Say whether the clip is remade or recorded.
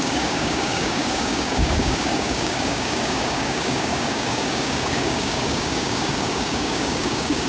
remade